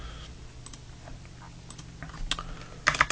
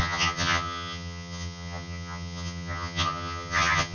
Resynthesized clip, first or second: second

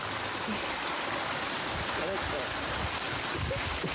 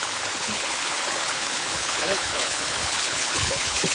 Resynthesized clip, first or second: second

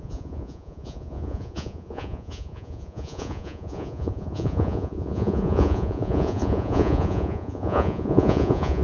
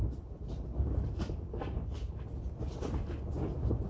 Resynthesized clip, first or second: first